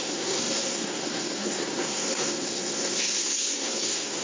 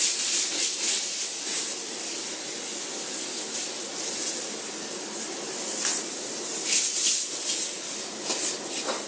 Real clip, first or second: second